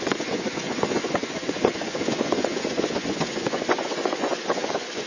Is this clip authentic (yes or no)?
no